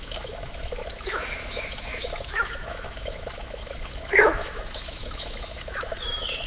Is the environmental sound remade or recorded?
remade